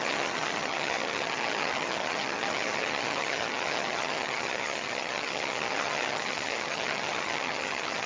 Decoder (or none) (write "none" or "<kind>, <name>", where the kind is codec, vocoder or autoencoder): vocoder, HiFi-GAN